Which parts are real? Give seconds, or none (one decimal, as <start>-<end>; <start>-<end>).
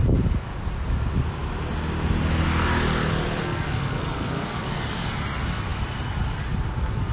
0.0-3.4; 4.6-7.1